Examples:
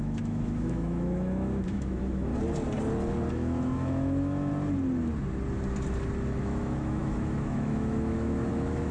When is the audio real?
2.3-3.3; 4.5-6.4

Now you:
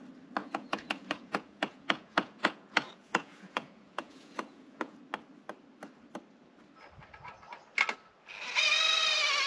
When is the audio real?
0.0-0.4; 5.0-9.5

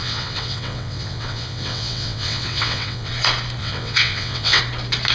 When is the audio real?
3.1-3.6; 4.6-5.1

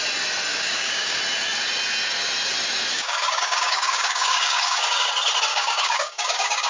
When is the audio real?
0.0-0.5; 1.2-2.9; 5.1-5.5

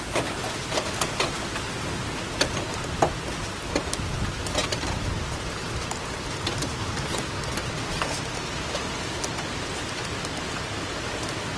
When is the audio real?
0.0-4.6; 5.1-5.6; 6.9-11.6

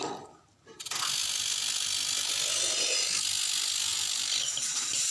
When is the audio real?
0.0-1.2; 2.3-3.9

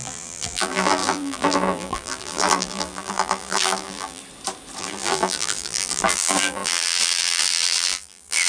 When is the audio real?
4.2-4.8